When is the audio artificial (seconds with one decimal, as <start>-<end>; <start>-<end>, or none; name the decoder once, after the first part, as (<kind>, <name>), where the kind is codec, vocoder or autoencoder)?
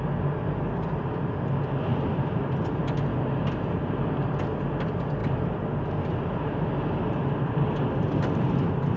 1.9-2.8 (vocoder, BigVGAN v2); 5.2-6.4